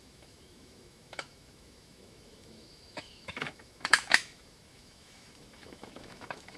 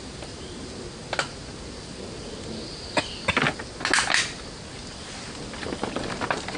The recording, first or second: second